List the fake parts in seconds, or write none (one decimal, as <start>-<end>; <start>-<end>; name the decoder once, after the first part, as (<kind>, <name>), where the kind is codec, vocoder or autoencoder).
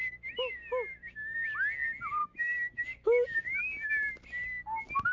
2.2-3.9 (autoencoder, DAC-VAE)